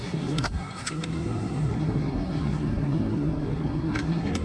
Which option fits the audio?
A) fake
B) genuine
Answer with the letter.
A